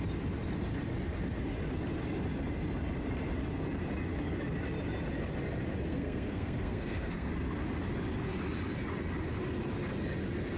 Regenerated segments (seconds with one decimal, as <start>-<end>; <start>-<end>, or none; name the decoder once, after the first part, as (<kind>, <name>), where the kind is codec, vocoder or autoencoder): 5.9-7.3 (codec, SNAC)